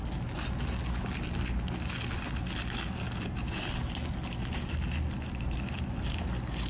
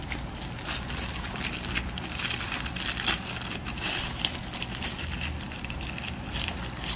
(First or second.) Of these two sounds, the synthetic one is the second